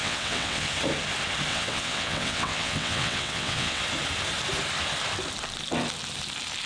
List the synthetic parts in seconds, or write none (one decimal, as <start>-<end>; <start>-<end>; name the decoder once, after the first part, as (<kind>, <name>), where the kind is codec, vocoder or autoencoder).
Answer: 0.0-0.7 (vocoder, WaveNeXt); 1.5-3.8